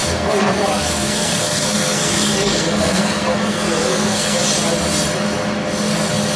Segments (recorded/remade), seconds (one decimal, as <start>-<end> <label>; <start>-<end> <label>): 0.0-4.4 remade; 4.4-6.4 recorded